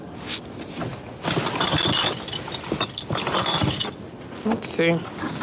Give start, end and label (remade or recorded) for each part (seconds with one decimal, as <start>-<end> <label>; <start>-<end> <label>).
0.0-5.4 recorded